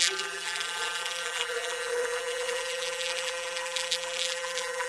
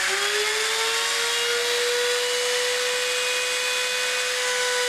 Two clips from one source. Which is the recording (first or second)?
second